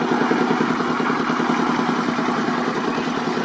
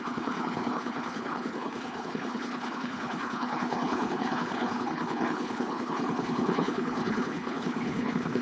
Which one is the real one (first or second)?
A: first